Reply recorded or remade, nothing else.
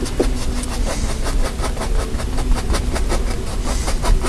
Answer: recorded